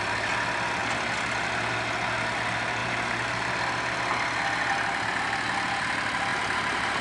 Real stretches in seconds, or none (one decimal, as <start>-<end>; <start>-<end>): 0.0-2.8; 3.6-6.3